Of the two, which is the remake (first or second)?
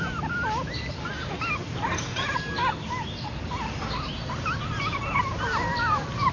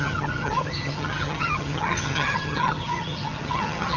second